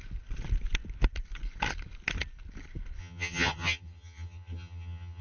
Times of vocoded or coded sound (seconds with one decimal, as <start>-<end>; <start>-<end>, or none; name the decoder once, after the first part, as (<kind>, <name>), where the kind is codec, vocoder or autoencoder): 3.0-5.2 (vocoder, HiFi-GAN)